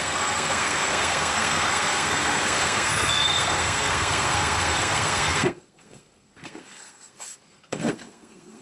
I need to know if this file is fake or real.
fake